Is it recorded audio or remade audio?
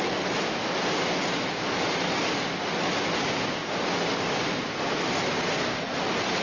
recorded